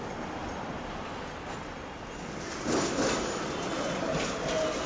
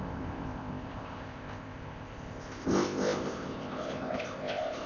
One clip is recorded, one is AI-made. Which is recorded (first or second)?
first